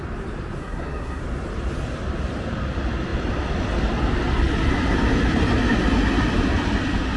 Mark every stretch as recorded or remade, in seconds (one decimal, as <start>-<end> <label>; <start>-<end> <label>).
0.0-0.6 recorded; 0.6-1.2 remade; 1.2-7.2 recorded